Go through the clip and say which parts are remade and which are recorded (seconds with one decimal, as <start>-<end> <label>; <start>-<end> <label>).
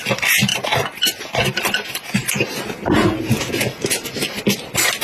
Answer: 0.0-5.0 recorded